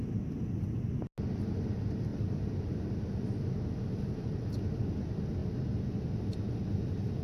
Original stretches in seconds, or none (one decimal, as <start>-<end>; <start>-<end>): 0.0-7.2